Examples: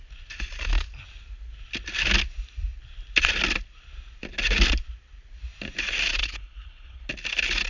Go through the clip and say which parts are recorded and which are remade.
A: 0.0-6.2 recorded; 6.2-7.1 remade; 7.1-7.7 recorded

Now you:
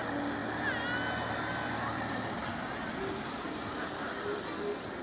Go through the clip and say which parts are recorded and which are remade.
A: 0.0-5.0 recorded

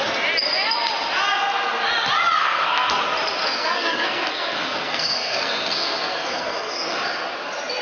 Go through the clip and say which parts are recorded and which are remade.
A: 0.0-2.4 recorded; 2.4-3.0 remade; 3.0-3.4 recorded; 3.4-7.0 remade; 7.0-7.8 recorded